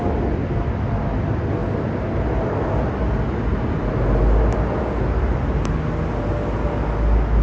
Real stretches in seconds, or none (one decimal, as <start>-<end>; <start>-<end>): 0.0-7.4